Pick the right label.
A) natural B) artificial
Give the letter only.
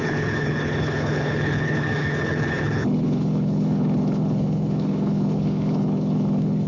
B